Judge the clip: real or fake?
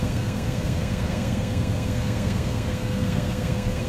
fake